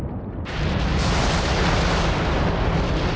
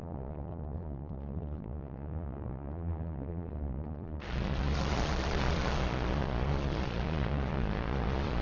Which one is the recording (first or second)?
first